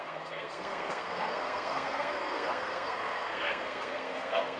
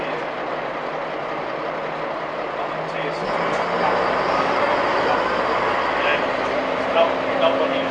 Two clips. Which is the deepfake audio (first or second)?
first